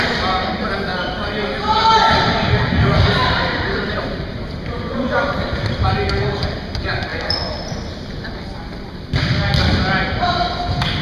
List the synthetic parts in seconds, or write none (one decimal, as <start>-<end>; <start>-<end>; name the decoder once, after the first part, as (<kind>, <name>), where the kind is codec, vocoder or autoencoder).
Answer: 3.2-5.1 (vocoder, BigVGAN v2)